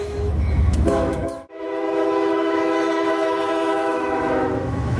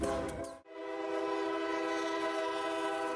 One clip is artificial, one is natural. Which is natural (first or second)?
second